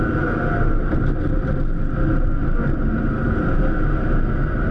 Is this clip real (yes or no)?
yes